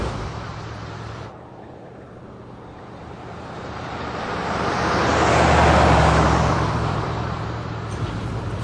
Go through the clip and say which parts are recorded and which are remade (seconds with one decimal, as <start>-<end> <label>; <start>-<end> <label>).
0.0-5.0 remade; 5.0-6.5 recorded; 6.5-8.6 remade